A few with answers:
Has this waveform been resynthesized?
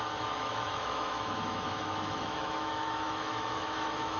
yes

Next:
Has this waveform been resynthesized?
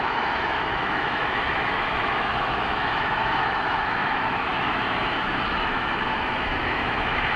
yes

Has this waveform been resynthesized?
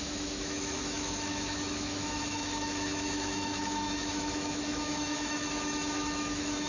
yes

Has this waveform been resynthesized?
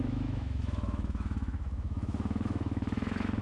yes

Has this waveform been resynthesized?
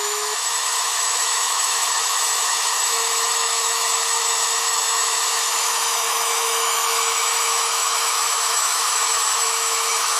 yes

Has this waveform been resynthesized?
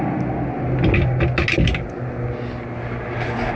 no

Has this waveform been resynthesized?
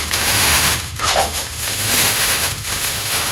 yes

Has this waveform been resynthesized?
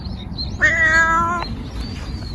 no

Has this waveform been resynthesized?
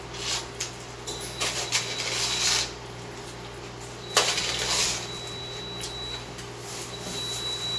no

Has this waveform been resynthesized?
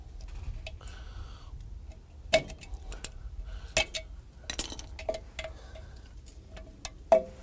no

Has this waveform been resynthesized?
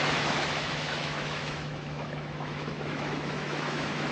yes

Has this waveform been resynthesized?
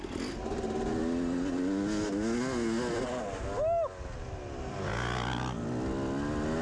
no